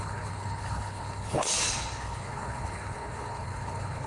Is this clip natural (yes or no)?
no